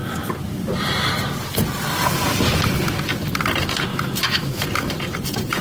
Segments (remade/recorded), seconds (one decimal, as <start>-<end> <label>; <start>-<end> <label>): 0.0-3.9 recorded; 3.9-4.7 remade; 4.7-5.6 recorded

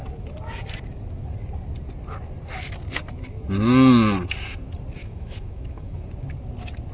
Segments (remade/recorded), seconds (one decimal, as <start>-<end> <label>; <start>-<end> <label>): 0.0-5.0 recorded; 5.0-6.0 remade; 6.0-6.9 recorded

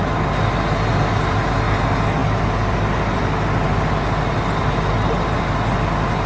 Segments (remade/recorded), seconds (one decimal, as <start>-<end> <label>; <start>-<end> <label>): 0.0-6.3 recorded

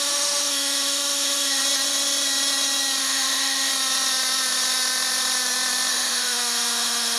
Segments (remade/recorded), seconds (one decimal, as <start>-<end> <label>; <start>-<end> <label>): 0.0-1.6 remade; 1.6-3.0 recorded; 3.0-3.7 remade; 3.7-5.9 recorded; 5.9-7.2 remade

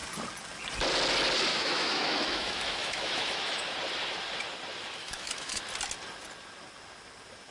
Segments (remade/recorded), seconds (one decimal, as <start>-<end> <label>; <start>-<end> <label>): 0.0-1.5 recorded; 1.5-3.6 remade; 3.6-5.0 recorded; 5.0-5.6 remade; 5.6-7.5 recorded

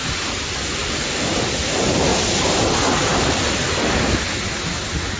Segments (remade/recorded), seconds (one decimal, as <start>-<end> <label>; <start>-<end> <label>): 0.0-5.2 recorded

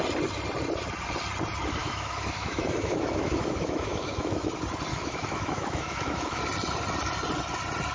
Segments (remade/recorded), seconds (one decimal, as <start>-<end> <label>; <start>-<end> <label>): 0.0-1.8 recorded; 1.8-4.5 remade; 4.5-4.9 recorded; 4.9-6.4 remade; 6.4-7.9 recorded